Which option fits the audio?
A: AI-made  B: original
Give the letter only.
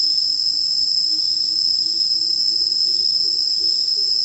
B